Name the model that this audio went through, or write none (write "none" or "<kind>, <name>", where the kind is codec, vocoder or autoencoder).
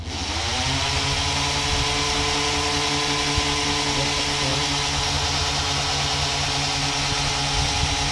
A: none